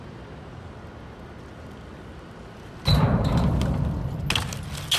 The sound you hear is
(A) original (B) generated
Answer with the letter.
A